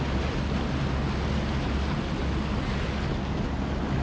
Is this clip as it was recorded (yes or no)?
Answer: yes